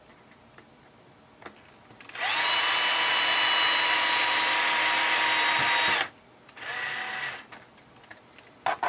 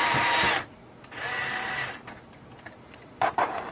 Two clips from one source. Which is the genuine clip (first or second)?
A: first